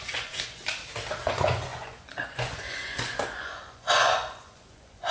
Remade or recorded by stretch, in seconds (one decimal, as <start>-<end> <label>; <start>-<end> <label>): 0.0-0.6 remade; 0.6-1.2 recorded; 1.2-5.1 remade